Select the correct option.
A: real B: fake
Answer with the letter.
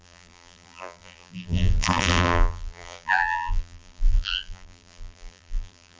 B